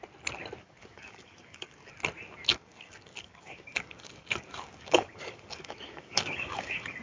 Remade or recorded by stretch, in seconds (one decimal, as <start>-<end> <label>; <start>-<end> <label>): 0.0-0.6 recorded; 0.6-1.9 remade; 1.9-2.5 recorded; 2.5-7.0 remade